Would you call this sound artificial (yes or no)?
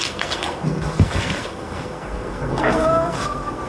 yes